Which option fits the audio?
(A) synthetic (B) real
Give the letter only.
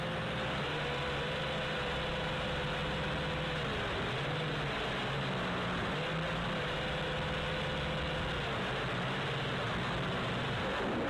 B